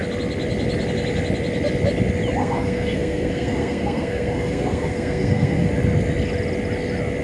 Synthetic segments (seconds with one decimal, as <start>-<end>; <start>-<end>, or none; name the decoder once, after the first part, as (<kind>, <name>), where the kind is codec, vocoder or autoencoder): 2.4-5.7 (codec, SNAC)